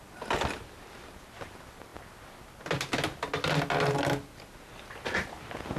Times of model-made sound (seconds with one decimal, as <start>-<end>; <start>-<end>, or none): none